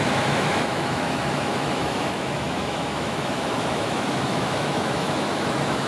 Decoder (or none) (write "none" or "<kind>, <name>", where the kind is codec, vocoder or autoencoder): autoencoder, DAC-VAE